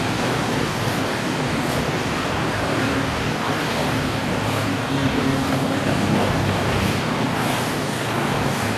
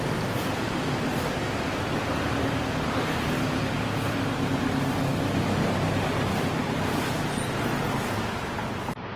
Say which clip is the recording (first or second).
second